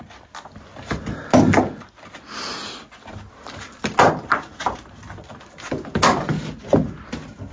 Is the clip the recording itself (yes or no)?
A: yes